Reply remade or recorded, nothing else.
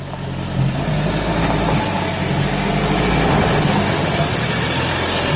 recorded